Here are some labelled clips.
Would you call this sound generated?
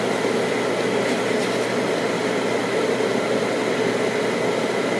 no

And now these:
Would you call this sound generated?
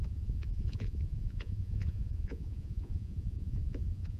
yes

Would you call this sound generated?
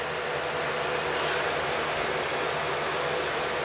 no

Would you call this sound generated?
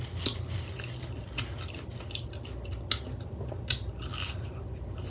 no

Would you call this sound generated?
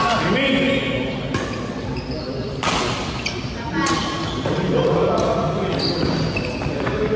no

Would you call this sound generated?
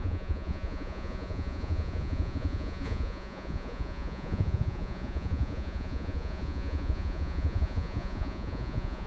yes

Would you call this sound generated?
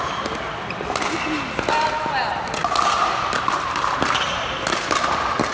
no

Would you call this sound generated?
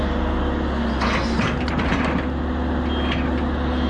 no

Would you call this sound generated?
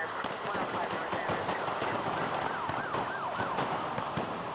no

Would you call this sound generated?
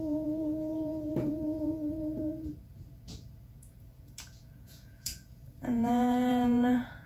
yes